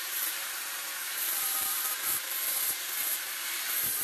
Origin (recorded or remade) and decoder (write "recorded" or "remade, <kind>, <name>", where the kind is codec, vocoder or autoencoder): remade, vocoder, BigVGAN v2